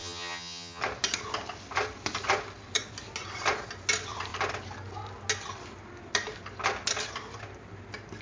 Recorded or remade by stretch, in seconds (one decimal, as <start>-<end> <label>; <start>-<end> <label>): 0.0-0.8 remade; 0.8-8.2 recorded